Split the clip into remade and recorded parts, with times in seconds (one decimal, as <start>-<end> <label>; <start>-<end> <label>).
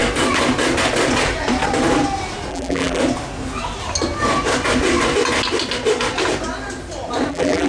0.0-2.5 recorded; 2.5-3.0 remade; 3.0-7.3 recorded; 7.3-7.7 remade